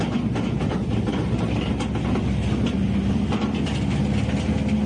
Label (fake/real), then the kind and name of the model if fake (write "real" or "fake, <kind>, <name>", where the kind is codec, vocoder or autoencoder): real